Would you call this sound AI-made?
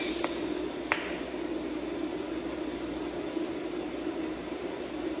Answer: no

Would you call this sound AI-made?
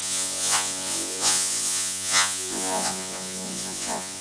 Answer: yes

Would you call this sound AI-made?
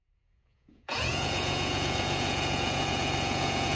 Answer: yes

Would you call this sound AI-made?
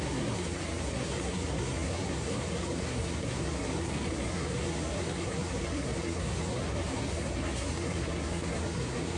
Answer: yes